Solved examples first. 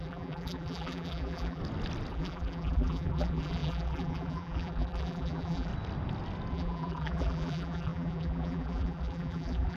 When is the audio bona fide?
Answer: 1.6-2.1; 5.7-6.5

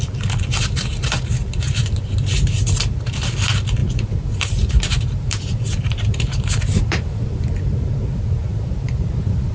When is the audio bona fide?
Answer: 0.0-1.4; 2.7-3.8; 7.4-8.5